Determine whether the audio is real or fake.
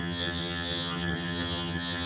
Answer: fake